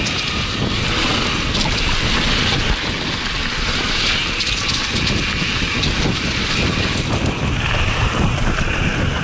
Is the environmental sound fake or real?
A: real